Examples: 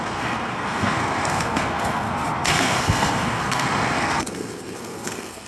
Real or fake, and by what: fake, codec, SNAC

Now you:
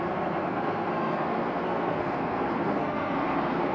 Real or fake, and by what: fake, codec, SNAC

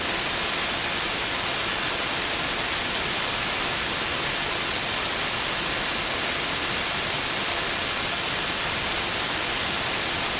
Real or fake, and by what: real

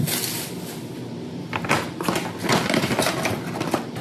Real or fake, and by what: real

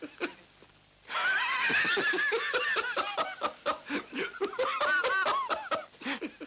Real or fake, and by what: real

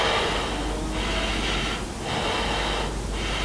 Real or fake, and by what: real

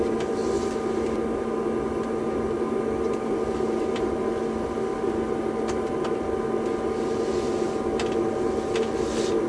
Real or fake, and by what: real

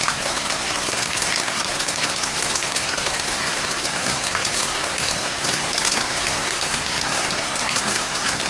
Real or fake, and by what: fake, codec, SNAC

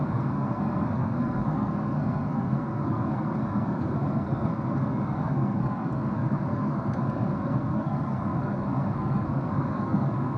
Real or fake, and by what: fake, codec, SNAC